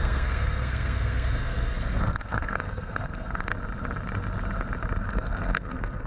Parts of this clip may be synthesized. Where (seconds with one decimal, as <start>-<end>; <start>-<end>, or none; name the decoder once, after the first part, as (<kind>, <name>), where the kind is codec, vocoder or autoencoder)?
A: 0.0-3.5 (codec, SNAC); 5.0-6.1